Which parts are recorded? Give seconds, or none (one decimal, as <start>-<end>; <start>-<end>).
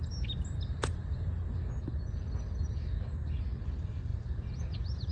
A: 0.0-5.1